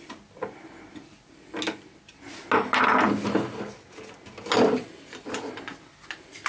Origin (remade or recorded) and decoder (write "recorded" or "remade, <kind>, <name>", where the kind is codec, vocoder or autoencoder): recorded